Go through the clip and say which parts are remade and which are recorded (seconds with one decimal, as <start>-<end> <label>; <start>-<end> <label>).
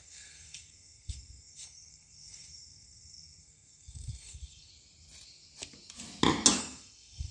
0.0-4.7 remade; 4.7-6.6 recorded; 6.6-7.3 remade